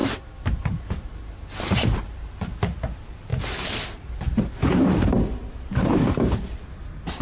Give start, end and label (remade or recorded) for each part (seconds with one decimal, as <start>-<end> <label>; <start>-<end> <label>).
0.0-7.2 remade